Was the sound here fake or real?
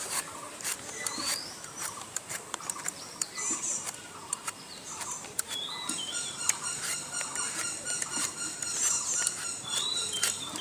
fake